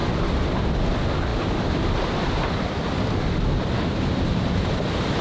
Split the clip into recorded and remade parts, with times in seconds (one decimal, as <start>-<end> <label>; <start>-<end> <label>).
0.0-0.6 remade; 0.6-5.2 recorded